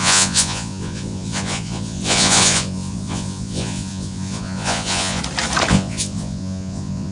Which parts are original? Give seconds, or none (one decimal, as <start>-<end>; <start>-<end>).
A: 5.2-5.7